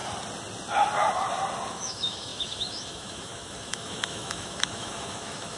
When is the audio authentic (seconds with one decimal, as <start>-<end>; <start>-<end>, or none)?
0.0-1.7